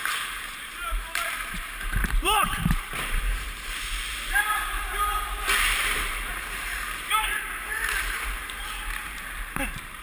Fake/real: fake